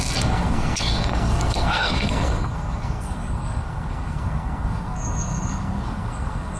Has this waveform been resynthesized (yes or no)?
yes